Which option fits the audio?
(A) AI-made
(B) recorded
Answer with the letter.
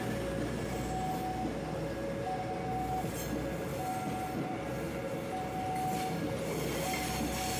B